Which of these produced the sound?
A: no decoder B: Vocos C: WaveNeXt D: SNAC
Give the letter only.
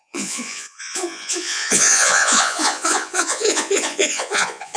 B